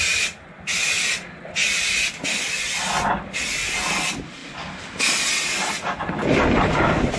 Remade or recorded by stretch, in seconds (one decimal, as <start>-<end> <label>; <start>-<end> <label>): 0.0-7.2 recorded